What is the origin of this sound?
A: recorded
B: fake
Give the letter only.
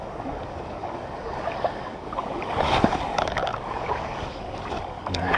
B